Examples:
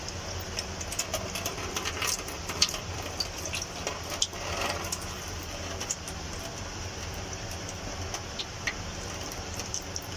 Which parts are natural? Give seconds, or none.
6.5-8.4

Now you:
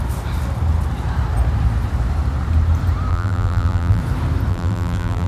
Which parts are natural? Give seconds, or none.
0.0-3.1; 4.0-4.5

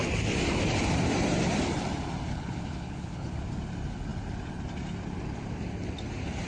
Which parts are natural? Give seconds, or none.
0.0-2.3; 3.3-6.5

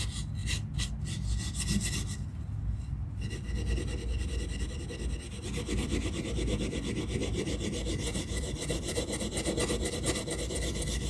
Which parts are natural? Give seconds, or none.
0.0-8.1; 9.9-11.1

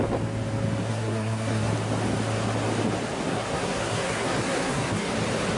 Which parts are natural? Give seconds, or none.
0.0-0.9; 1.7-3.3; 5.1-5.6

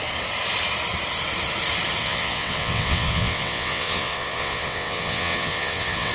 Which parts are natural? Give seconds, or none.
0.0-2.0